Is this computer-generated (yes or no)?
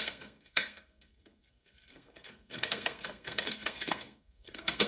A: yes